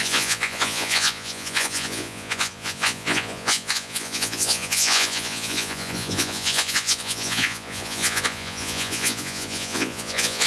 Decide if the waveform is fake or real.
fake